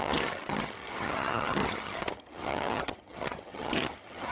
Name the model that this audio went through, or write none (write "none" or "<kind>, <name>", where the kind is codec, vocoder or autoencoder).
vocoder, HiFi-GAN